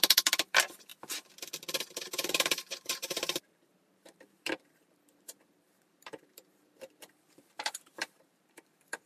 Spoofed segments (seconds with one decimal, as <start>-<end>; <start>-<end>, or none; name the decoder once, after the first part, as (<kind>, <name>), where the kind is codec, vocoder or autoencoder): 0.0-0.9 (vocoder, BigVGAN v2); 2.0-9.1